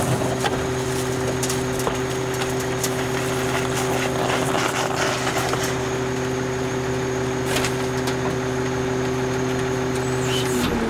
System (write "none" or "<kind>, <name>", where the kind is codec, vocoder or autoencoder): none